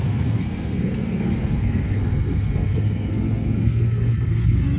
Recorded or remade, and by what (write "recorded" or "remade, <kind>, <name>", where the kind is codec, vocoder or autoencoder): remade, codec, SNAC